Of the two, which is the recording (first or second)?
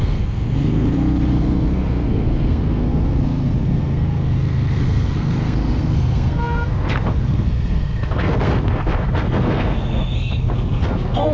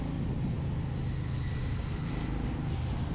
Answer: second